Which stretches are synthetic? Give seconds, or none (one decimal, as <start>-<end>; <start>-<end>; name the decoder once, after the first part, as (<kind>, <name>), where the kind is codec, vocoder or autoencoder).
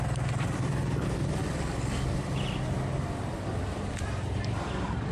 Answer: 0.0-5.1 (vocoder, BigVGAN v2)